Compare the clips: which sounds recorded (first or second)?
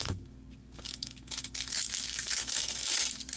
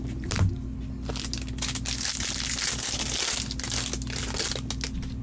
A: second